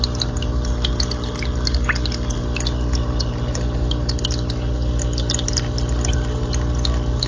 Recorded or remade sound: recorded